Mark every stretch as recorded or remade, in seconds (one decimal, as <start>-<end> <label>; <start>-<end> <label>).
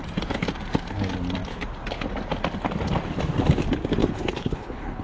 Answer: 0.0-4.0 recorded; 4.0-5.0 remade